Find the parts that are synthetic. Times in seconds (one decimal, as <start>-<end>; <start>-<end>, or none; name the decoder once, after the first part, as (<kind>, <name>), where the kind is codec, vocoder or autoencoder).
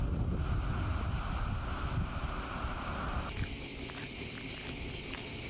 none